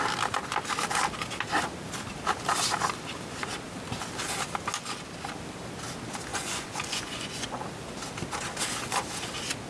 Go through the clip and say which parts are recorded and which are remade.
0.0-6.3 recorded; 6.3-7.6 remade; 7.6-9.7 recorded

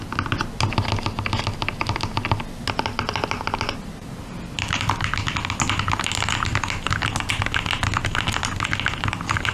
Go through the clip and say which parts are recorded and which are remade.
0.0-9.5 recorded

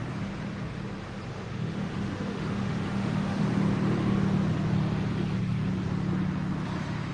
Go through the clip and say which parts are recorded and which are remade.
0.0-1.3 recorded; 1.3-3.4 remade; 3.4-7.1 recorded

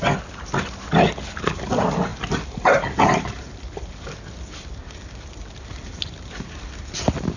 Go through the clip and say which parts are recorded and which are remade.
0.0-7.4 recorded

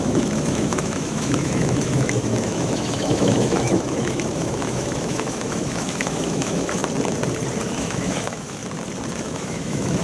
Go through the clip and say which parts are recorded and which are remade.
0.0-6.8 remade; 6.8-7.6 recorded; 7.6-8.6 remade; 8.6-9.2 recorded; 9.2-10.0 remade

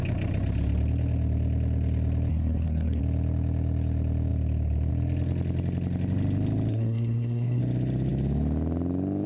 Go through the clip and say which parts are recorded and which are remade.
0.0-2.3 recorded; 2.3-3.0 remade; 3.0-6.7 recorded; 6.7-7.6 remade; 7.6-9.3 recorded